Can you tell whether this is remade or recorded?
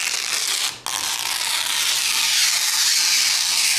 recorded